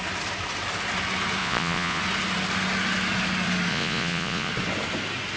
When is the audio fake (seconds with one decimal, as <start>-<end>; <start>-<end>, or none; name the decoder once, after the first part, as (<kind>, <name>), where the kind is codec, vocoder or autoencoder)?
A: 1.4-2.0 (vocoder, Vocos); 3.7-4.5